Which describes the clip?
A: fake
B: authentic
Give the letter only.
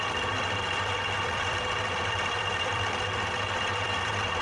A